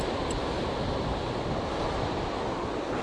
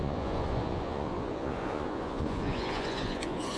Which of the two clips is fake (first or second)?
second